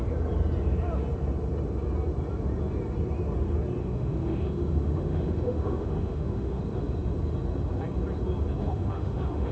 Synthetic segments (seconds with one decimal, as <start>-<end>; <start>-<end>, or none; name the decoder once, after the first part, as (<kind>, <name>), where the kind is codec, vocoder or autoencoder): 3.8-6.6 (autoencoder, DAC-VAE); 8.6-9.5